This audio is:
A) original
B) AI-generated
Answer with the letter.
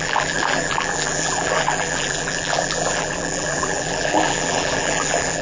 B